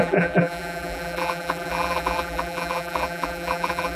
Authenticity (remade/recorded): remade